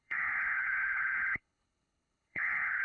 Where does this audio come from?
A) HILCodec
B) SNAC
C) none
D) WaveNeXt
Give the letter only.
A